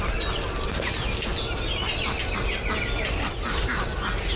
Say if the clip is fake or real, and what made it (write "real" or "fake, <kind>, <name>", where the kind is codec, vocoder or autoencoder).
real